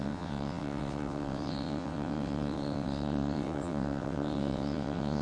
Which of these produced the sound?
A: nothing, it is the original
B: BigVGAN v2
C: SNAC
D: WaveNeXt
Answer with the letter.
D